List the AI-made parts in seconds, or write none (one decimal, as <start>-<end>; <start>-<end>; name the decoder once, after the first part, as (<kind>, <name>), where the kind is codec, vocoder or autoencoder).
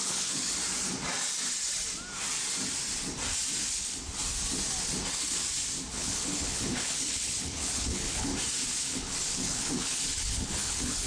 0.0-0.6 (codec, HILCodec); 3.7-4.2; 5.9-8.3; 8.8-11.1